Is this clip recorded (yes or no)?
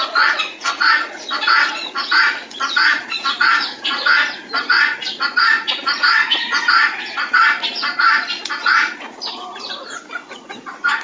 no